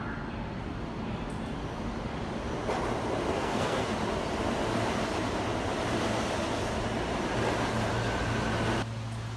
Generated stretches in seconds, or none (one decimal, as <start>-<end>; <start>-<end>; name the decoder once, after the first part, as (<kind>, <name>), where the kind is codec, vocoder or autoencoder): 3.3-3.9 (codec, SNAC)